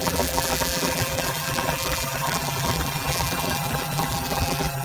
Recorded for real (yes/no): no